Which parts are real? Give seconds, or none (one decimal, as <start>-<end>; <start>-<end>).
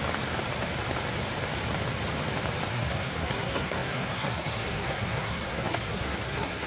0.0-2.7